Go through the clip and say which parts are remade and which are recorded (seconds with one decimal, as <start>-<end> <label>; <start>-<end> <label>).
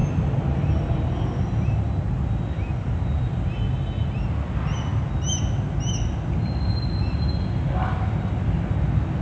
0.0-9.2 recorded